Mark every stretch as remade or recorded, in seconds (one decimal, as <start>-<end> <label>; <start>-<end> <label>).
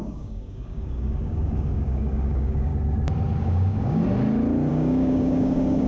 0.0-2.7 remade; 2.7-3.4 recorded; 3.4-4.0 remade; 4.0-4.7 recorded; 4.7-5.9 remade